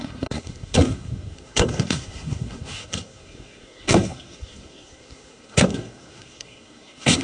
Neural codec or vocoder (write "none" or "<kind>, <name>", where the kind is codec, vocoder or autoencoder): codec, SNAC